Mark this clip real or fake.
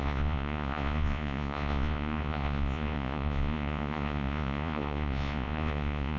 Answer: fake